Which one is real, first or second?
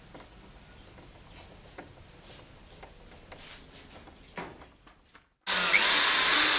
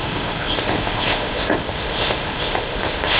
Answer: first